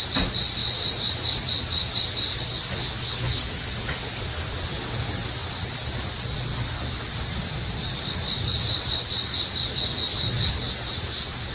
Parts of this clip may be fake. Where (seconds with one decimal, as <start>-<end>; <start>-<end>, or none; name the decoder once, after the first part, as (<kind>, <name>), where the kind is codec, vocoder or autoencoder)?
5.4-9.6 (vocoder, BigVGAN v2)